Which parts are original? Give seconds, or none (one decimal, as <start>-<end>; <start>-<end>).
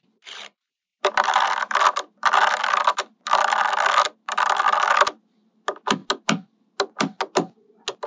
0.0-8.1